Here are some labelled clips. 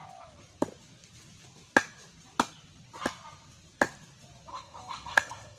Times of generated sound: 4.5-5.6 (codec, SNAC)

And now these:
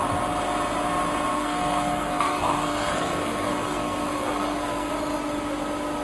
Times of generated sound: 1.3-4.9 (codec, SNAC)

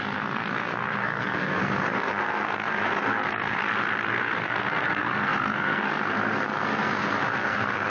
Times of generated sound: 0.0-3.6 (codec, SNAC); 4.2-7.9

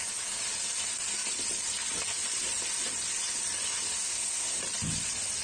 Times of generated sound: 4.0-4.6 (codec, SNAC)

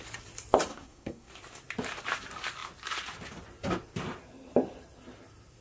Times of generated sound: 0.7-1.3 (codec, SNAC)

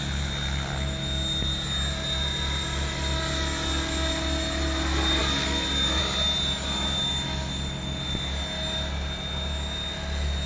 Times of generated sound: none

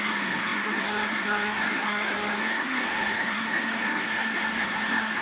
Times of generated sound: 0.0-5.2 (codec, SNAC)

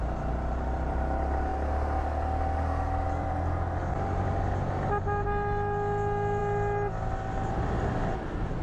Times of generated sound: none